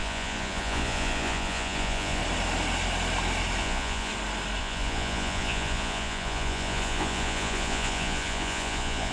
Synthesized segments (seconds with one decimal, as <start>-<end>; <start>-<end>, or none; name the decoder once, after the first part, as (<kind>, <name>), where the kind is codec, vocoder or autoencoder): 0.0-2.2 (vocoder, Vocos); 3.6-4.1; 4.6-9.1